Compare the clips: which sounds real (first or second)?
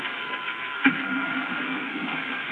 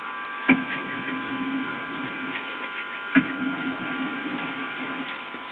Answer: second